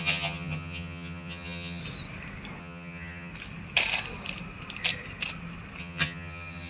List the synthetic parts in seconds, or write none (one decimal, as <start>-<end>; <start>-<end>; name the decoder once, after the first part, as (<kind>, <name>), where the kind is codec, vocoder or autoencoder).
0.0-1.8 (vocoder, HiFi-GAN); 2.6-3.3; 5.8-6.7